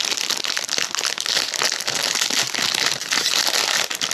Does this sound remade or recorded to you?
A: recorded